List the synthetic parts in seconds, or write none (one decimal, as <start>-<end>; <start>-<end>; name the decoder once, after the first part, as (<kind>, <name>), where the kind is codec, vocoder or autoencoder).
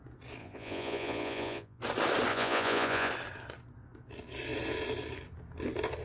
0.4-1.8 (vocoder, Vocos); 2.3-3.1